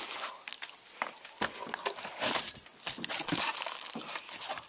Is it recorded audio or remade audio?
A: recorded